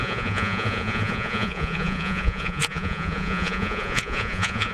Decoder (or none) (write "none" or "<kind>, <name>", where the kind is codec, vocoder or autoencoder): vocoder, Vocos